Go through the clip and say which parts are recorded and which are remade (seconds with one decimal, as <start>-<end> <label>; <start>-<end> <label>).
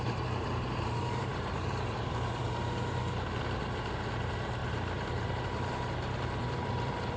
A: 0.0-7.2 remade